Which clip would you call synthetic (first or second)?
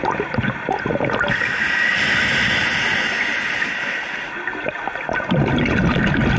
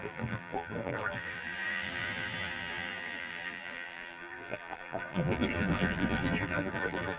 second